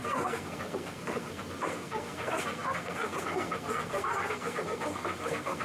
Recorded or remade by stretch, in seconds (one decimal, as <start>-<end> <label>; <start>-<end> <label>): 0.0-5.6 remade